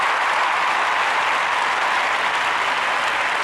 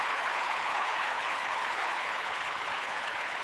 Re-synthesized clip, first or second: second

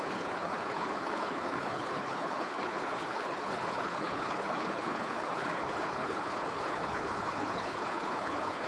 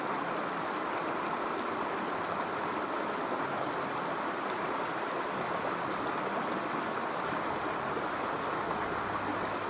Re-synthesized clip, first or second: first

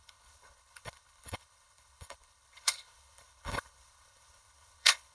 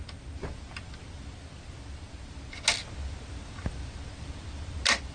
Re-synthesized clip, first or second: first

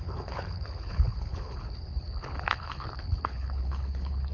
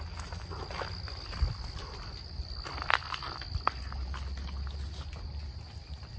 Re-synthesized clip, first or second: first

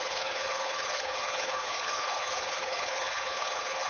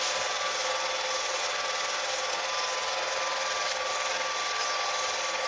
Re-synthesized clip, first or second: first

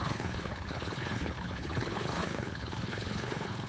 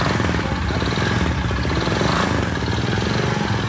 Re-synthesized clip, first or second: first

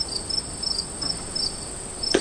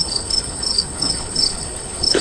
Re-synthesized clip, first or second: second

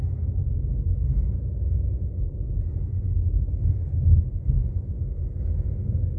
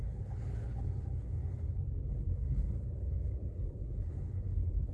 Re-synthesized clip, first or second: second